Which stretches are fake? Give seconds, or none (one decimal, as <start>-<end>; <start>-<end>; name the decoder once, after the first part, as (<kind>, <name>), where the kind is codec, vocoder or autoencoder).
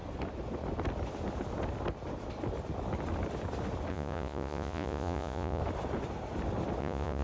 3.9-5.6 (vocoder, Vocos); 6.8-7.2